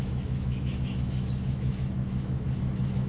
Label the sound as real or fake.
fake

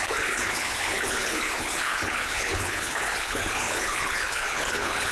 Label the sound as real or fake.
fake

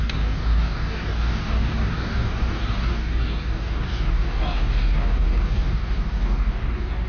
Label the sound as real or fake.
fake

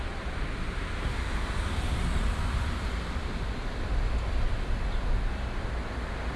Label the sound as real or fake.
real